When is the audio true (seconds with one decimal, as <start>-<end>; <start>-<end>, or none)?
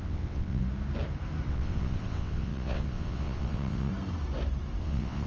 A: 0.6-1.5; 3.9-4.8